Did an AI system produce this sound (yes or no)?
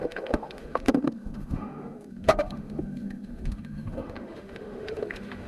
yes